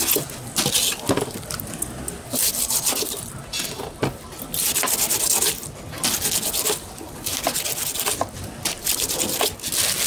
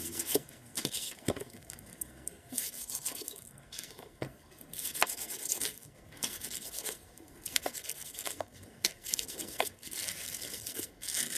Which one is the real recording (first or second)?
first